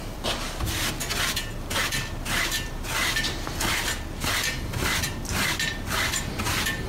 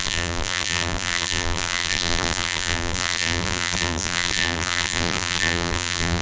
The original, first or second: first